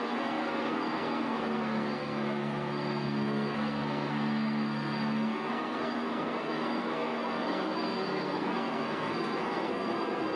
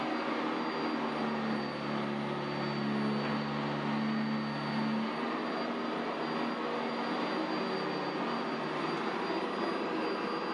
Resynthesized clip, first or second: first